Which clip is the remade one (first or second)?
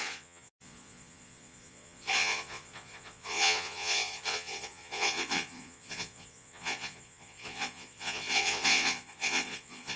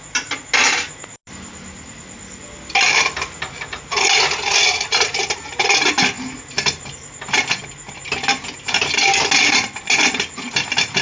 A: first